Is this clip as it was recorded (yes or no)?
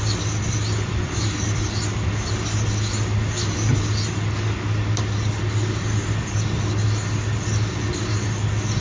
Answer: yes